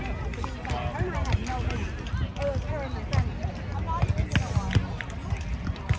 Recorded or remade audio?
recorded